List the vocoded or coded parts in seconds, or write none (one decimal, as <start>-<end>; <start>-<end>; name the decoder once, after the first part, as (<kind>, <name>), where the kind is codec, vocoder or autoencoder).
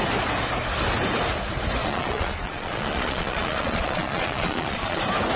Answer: 1.8-5.0 (vocoder, Vocos)